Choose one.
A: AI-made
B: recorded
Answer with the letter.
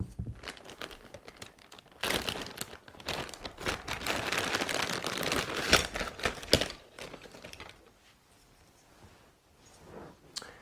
B